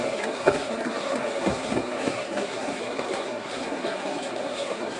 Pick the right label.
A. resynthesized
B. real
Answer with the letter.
A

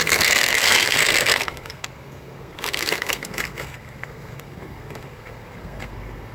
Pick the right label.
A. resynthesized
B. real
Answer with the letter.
A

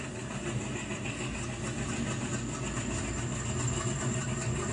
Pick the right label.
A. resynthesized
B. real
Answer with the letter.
B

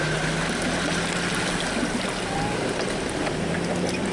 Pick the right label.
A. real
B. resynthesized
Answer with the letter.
A